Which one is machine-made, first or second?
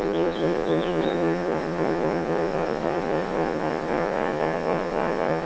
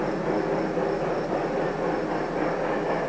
first